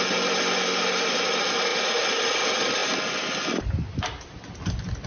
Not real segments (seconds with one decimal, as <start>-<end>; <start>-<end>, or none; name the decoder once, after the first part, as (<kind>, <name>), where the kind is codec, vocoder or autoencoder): none